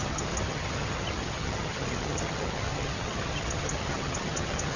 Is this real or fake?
fake